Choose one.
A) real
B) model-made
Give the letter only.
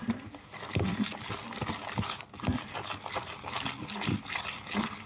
A